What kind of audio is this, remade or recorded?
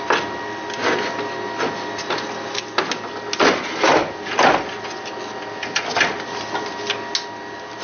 recorded